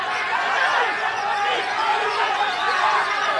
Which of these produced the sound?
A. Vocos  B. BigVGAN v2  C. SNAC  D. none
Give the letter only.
A